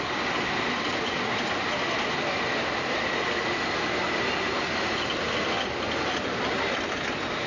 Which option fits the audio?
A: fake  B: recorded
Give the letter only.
B